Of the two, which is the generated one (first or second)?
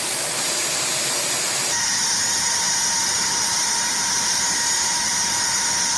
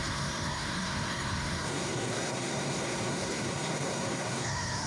second